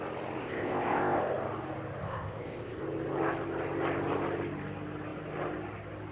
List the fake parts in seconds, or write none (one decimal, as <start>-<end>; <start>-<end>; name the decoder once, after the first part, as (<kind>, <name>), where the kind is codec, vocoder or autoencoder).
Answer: 0.4-1.2 (codec, ZipCodec); 2.0-2.8